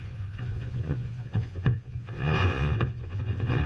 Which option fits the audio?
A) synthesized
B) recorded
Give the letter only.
A